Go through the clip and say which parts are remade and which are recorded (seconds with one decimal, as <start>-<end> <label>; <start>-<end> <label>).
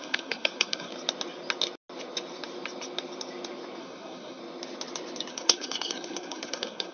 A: 0.0-0.9 remade; 0.9-3.8 recorded; 3.8-4.4 remade; 4.4-5.3 recorded; 5.3-6.9 remade